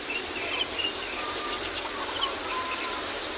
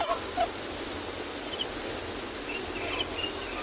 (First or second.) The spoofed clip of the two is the first